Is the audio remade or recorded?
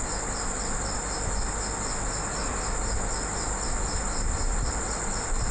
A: recorded